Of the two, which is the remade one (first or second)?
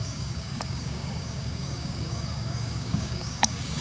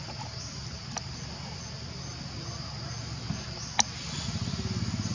first